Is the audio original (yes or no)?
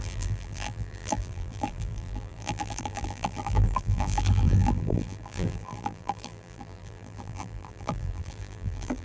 no